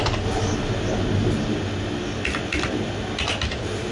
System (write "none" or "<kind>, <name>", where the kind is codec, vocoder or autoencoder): none